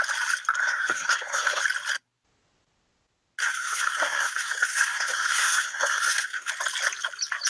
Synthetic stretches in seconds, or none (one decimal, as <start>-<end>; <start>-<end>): 0.6-1.6; 3.4-6.5